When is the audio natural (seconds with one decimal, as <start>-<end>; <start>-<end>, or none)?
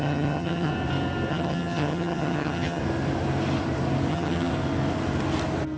0.7-1.3; 2.8-4.1; 4.5-5.8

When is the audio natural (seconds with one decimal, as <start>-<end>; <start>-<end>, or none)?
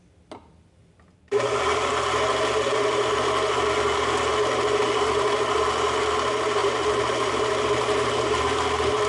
0.0-0.8; 1.9-6.6; 8.1-9.1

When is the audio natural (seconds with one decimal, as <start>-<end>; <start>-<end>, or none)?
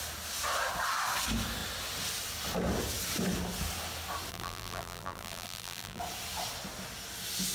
0.0-4.3; 6.0-7.5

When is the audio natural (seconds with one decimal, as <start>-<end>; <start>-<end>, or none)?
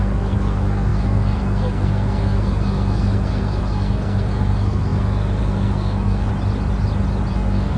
6.3-7.3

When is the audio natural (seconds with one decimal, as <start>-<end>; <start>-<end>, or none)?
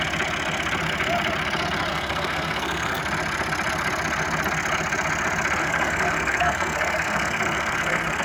0.0-1.9; 3.0-5.6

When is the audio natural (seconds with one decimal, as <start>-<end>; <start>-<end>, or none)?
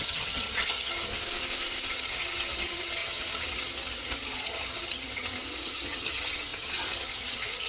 1.1-1.9